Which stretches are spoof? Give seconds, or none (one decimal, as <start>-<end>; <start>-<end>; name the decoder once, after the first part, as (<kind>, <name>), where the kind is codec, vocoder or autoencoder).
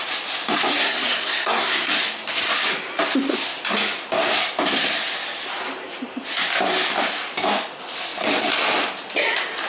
0.7-1.9 (codec, SNAC)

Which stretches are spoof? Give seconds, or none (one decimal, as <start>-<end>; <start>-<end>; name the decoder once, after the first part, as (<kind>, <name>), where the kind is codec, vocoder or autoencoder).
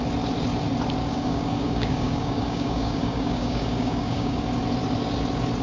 1.0-4.4 (codec, DAC)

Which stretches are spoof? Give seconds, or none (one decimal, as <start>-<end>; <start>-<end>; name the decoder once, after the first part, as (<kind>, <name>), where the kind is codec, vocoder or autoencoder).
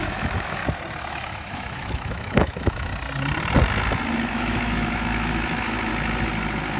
0.0-0.6 (autoencoder, DAC-VAE); 1.1-2.9; 4.3-5.9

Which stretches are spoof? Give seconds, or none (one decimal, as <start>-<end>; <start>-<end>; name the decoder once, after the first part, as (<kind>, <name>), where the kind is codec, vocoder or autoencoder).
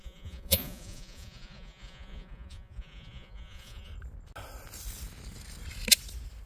0.0-3.9 (vocoder, Vocos)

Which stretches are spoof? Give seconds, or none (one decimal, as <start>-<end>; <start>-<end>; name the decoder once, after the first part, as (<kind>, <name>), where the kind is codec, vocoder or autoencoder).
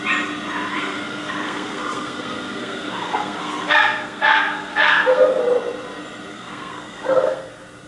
0.7-5.4 (codec, SNAC); 6.3-7.5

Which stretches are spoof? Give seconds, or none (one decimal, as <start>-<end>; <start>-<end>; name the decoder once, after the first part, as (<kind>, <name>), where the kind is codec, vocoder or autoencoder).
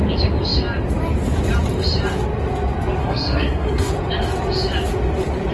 3.0-3.9 (codec, SNAC)